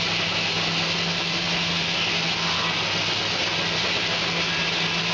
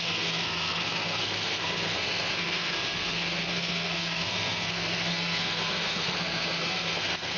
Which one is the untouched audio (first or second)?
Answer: first